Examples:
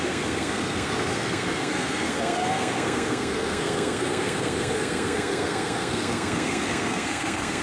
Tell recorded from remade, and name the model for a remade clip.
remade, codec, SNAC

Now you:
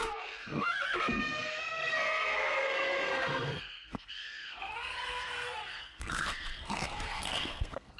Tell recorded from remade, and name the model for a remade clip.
remade, codec, SNAC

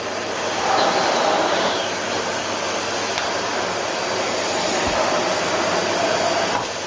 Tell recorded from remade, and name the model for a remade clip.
recorded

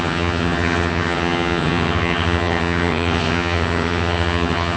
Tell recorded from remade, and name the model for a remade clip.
remade, vocoder, HiFi-GAN